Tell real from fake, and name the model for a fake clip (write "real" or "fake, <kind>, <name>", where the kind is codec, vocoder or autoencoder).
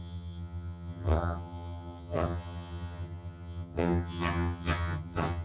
fake, vocoder, HiFi-GAN